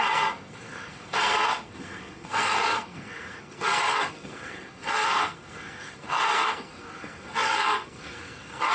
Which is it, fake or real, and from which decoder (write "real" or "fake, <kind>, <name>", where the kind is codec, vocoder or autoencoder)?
fake, codec, SNAC